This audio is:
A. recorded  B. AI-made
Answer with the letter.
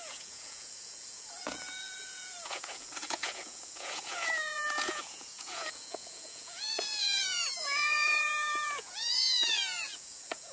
B